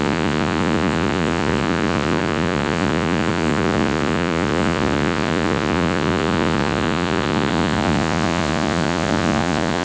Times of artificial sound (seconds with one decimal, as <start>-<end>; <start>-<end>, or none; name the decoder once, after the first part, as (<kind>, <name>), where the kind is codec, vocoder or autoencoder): 0.0-9.8 (vocoder, Vocos)